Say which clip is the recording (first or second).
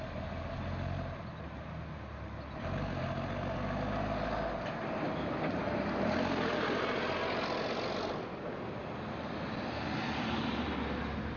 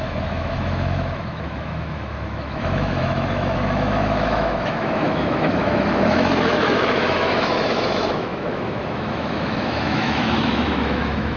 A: first